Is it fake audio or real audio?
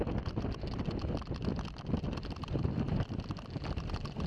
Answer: real